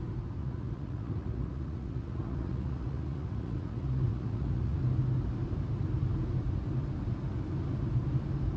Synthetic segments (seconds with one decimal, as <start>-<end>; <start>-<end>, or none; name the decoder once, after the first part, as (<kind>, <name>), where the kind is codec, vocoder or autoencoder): 0.4-4.8 (vocoder, Vocos)